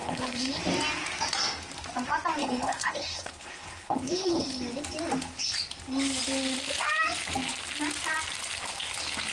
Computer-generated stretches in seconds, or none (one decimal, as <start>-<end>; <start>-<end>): 0.0-0.6; 2.4-4.6